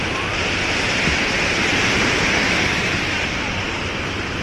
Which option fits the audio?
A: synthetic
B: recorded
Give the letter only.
A